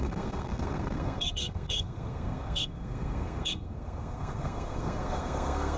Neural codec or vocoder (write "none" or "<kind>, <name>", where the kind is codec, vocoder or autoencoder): codec, SNAC